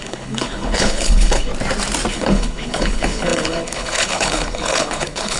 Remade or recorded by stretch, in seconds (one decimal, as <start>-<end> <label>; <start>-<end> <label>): 0.0-1.5 remade; 1.5-2.1 recorded; 2.1-5.4 remade